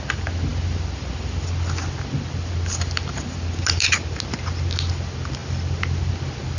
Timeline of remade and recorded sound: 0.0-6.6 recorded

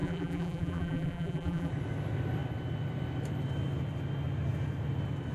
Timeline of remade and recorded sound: 0.0-1.7 remade; 1.7-5.3 recorded

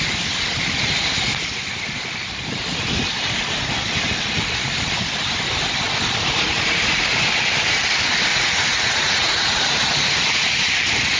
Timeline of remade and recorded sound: 0.0-8.3 recorded; 8.3-10.7 remade; 10.7-11.2 recorded

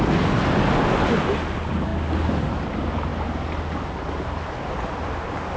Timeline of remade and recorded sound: 0.0-5.6 recorded

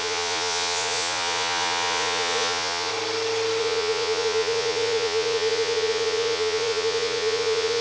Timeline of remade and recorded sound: 0.0-2.9 remade; 2.9-3.6 recorded; 3.6-7.8 remade